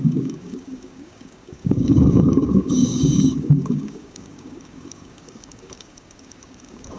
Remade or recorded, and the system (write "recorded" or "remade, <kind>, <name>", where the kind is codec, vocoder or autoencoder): remade, codec, DAC